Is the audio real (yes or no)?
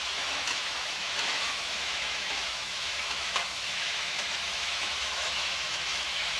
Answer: no